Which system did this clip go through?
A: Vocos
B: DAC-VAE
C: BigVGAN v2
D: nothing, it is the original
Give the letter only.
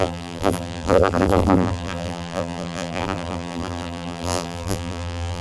C